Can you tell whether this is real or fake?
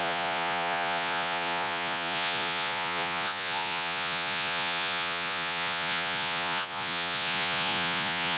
fake